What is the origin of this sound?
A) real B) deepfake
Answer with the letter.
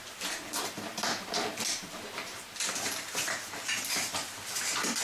B